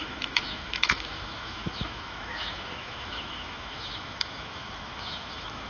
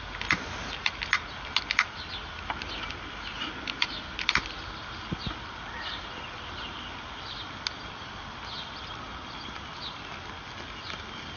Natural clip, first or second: second